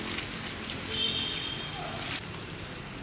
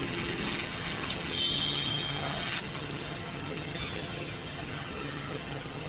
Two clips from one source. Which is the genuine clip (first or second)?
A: first